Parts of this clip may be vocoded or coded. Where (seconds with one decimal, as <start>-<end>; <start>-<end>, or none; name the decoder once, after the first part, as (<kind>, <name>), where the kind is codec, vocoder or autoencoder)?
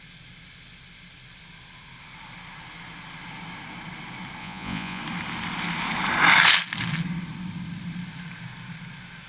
4.4-5.0 (vocoder, Vocos)